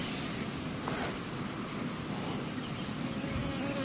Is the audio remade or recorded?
recorded